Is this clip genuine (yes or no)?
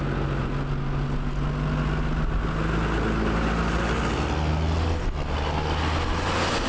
yes